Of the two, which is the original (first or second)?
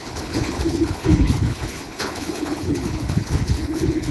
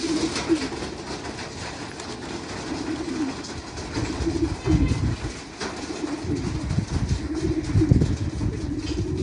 second